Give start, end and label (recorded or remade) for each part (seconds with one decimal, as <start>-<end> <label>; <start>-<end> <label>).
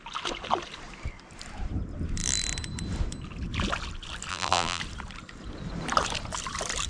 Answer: 0.0-4.3 recorded; 4.3-4.8 remade; 4.8-6.9 recorded